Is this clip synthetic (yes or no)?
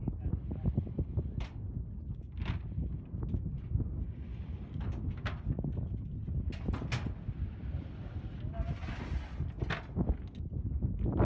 no